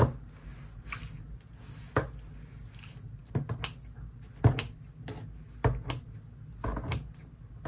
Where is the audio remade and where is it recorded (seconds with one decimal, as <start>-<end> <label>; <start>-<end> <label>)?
0.0-7.7 recorded